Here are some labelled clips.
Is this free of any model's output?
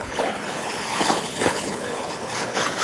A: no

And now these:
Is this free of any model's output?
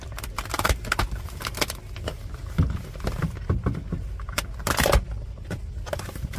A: yes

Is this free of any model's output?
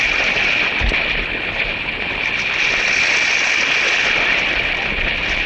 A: yes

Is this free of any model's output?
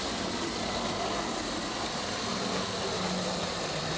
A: yes